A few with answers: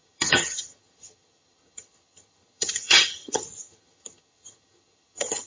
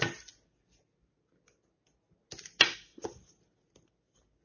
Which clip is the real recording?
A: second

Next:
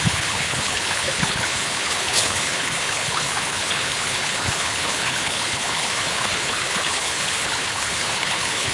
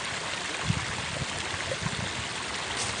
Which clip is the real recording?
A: second